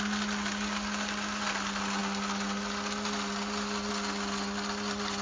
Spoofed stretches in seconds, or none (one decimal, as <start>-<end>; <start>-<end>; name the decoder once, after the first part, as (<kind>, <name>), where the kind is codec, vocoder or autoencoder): none